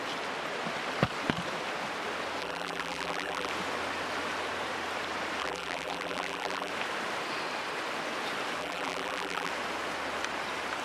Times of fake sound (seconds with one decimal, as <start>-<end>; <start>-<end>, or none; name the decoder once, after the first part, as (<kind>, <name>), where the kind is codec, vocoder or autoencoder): 2.4-3.5 (vocoder, BigVGAN v2); 5.4-6.7; 8.6-9.5

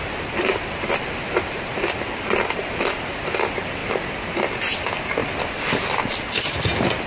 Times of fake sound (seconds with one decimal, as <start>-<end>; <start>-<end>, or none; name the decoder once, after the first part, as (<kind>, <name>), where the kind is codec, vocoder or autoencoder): none